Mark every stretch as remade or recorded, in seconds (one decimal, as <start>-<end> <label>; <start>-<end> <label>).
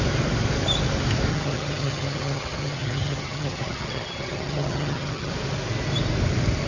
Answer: 0.0-1.3 recorded; 1.3-5.3 remade; 5.3-6.7 recorded